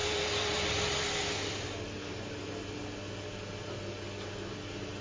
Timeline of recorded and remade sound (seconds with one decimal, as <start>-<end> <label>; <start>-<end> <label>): 0.0-5.0 recorded

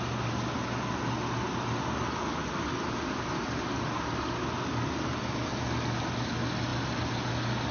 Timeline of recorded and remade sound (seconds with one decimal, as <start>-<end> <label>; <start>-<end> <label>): 0.0-7.7 recorded

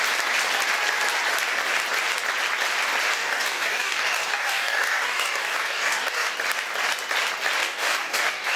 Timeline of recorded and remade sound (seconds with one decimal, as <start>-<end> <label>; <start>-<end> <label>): 0.0-3.1 recorded; 3.1-6.3 remade; 6.3-7.6 recorded; 7.6-8.6 remade

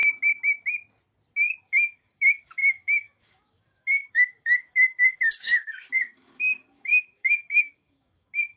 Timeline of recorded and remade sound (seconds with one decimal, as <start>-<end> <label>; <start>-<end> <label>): 0.0-1.6 recorded; 1.6-8.6 remade

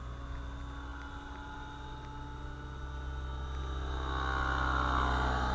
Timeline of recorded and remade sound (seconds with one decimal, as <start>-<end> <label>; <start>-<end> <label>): 0.0-5.5 recorded

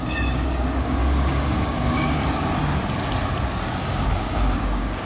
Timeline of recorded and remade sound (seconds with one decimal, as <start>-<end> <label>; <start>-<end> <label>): 0.0-2.2 remade; 2.2-3.7 recorded; 3.7-5.1 remade